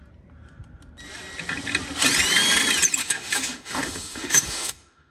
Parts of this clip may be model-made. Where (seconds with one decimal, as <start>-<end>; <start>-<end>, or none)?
3.0-5.1